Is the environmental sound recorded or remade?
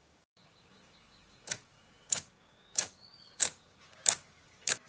remade